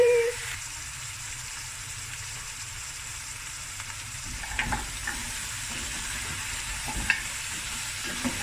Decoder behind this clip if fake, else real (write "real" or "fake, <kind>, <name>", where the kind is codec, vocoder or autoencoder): fake, vocoder, BigVGAN v2